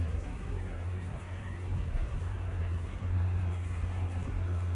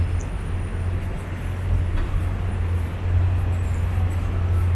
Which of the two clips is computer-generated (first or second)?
first